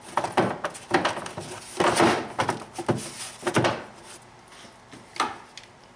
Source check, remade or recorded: recorded